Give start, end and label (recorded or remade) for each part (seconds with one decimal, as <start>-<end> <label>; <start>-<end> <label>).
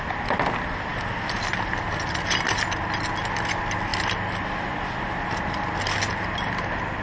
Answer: 0.0-7.0 recorded